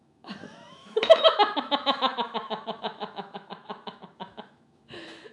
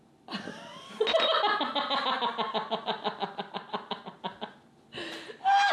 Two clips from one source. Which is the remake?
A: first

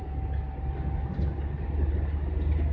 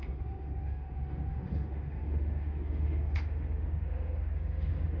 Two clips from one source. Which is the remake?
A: second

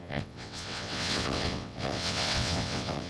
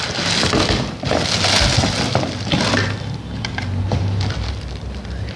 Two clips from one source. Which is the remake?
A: first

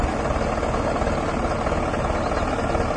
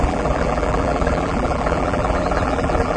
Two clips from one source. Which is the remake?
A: second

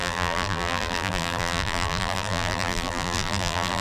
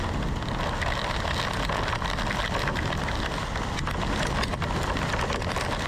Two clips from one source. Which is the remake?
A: first